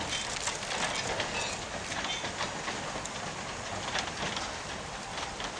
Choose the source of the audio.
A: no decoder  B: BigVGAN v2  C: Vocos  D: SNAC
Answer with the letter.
A